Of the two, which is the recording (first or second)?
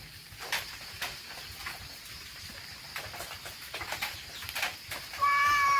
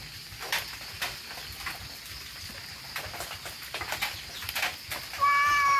second